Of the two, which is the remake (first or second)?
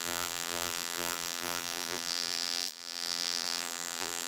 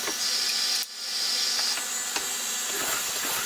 first